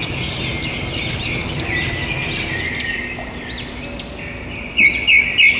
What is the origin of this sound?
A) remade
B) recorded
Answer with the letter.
B